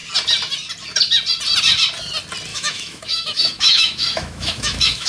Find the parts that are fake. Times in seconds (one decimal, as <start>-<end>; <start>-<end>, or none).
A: 2.5-5.1